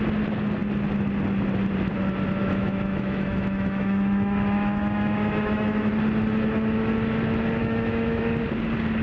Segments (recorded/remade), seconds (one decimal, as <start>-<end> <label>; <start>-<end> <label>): 0.0-2.4 recorded; 2.4-5.9 remade; 5.9-7.6 recorded; 7.6-8.2 remade; 8.2-9.0 recorded